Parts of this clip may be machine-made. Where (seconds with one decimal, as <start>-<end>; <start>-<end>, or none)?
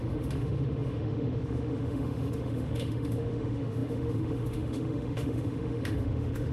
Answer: 0.0-6.5